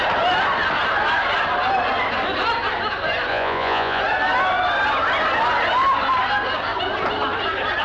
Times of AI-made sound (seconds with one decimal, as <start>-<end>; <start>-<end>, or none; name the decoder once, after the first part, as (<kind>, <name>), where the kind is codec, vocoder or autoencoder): 3.3-4.0 (vocoder, Vocos)